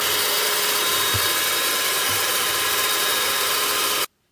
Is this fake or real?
fake